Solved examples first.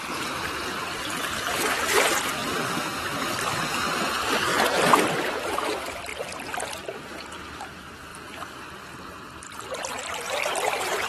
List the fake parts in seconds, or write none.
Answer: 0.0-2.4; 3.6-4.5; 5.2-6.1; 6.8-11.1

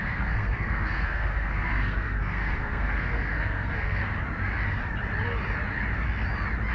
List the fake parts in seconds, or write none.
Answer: 0.0-4.0